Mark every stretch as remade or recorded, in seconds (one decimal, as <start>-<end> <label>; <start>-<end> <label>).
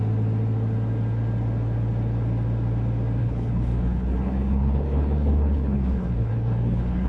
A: 0.0-3.2 recorded; 3.2-7.1 remade